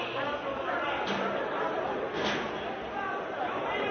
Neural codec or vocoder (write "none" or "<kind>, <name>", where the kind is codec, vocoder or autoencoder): none